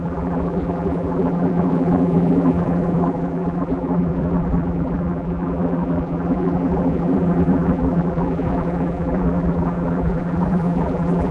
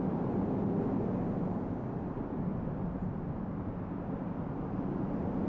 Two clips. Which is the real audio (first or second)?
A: second